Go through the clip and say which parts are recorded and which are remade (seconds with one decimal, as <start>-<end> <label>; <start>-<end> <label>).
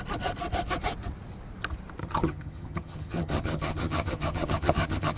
0.0-2.0 recorded; 2.0-5.2 remade